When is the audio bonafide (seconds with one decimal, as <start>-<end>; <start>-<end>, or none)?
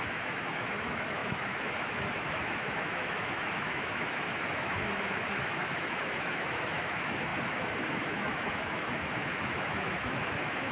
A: none